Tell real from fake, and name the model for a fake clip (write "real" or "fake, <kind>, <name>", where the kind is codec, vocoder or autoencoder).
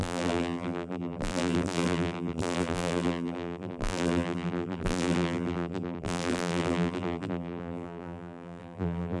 fake, vocoder, BigVGAN v2